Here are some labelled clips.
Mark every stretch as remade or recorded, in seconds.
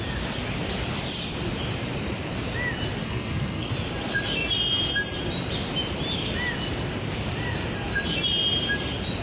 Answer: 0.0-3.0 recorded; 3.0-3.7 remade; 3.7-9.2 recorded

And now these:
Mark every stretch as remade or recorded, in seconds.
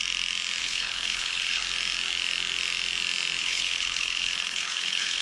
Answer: 0.0-0.6 recorded; 0.6-1.6 remade; 1.6-3.4 recorded; 3.4-5.2 remade